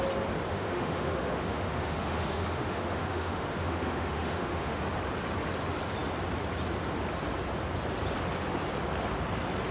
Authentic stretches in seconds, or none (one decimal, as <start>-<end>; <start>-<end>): 0.0-0.5; 4.8-9.7